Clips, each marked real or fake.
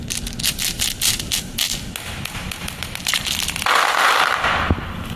real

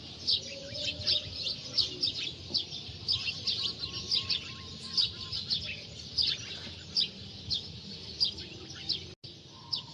real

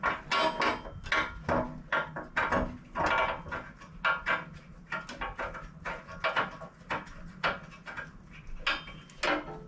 real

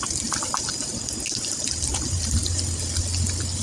real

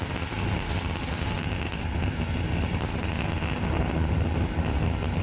real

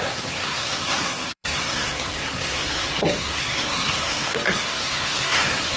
fake